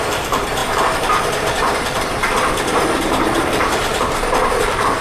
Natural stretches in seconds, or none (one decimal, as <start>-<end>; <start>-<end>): none